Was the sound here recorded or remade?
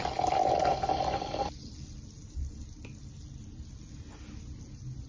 recorded